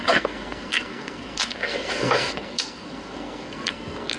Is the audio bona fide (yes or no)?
no